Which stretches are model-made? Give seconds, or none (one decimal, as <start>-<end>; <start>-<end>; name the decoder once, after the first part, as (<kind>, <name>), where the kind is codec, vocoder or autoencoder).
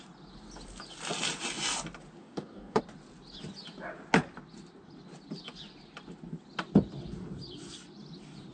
2.2-2.8 (codec, DAC)